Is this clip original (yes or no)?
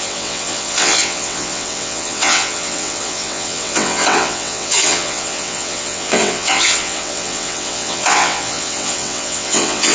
no